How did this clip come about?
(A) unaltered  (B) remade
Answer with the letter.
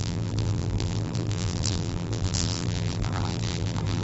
B